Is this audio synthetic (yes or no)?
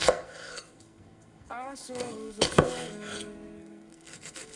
yes